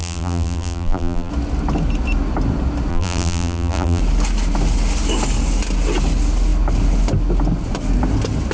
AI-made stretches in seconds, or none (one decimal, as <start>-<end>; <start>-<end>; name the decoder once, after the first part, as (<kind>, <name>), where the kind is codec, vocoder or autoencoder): 0.0-1.3 (vocoder, BigVGAN v2); 2.9-4.0